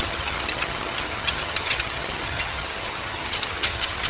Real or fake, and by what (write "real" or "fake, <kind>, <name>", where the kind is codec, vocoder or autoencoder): fake, vocoder, HiFi-GAN